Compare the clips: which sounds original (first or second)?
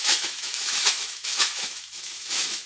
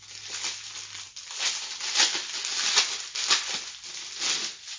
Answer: second